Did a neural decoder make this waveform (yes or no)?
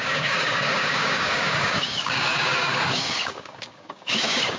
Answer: yes